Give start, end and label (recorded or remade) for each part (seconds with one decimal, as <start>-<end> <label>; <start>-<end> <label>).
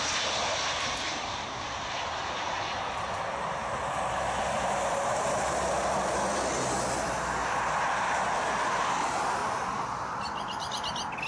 0.0-11.3 recorded